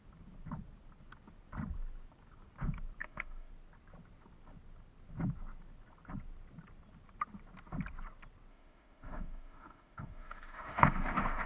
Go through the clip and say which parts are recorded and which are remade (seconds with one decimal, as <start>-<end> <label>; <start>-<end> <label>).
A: 0.0-3.0 recorded; 3.0-3.5 remade; 3.5-8.5 recorded; 8.5-11.5 remade